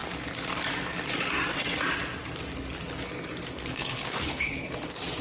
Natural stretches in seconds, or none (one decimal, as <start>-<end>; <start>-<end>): 0.0-3.7; 4.7-5.2